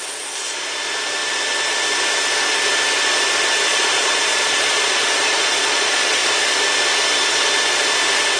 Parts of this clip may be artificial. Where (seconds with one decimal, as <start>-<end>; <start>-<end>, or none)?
3.7-6.6